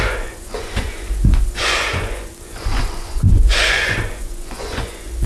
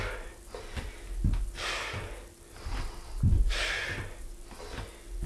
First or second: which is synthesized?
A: first